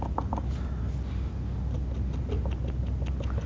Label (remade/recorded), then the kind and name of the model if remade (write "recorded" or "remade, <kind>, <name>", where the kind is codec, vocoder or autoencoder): recorded